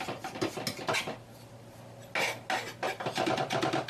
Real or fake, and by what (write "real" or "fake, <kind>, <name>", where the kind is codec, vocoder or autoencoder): real